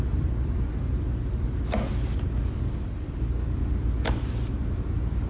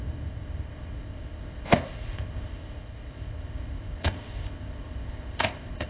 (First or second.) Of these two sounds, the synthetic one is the second